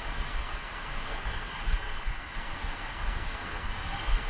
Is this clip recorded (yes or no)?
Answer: no